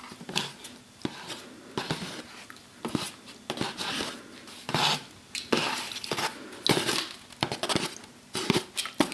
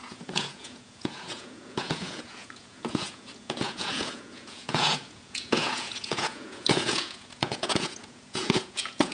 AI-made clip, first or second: second